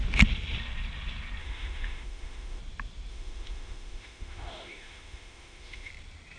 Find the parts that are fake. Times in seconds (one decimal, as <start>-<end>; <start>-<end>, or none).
1.4-2.6; 3.1-5.9